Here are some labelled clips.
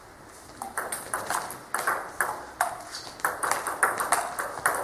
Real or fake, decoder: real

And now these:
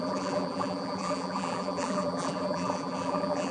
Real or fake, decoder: fake, vocoder, BigVGAN v2